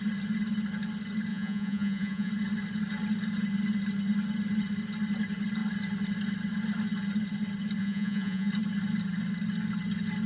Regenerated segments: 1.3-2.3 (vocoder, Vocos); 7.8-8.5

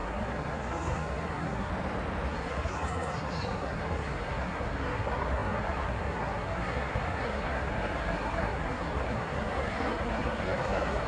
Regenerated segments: 0.0-1.7 (codec, SNAC); 2.3-11.1

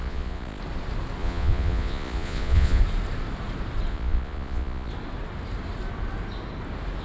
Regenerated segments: 0.0-0.6 (vocoder, Vocos); 1.2-2.8; 3.9-4.9

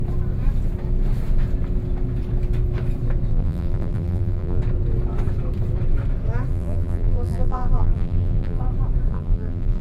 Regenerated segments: 3.3-4.6 (vocoder, BigVGAN v2); 6.5-8.6; 9.1-9.8

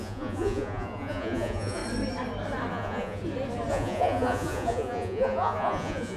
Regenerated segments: 0.0-1.8 (vocoder, Vocos); 2.7-3.2; 3.7-6.2

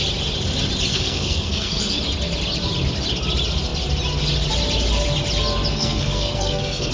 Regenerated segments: 0.9-2.0 (codec, SNAC); 5.7-6.9

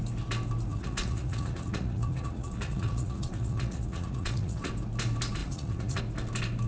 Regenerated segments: 0.7-4.7 (vocoder, Vocos); 5.4-6.0